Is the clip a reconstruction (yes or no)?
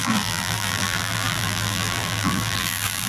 yes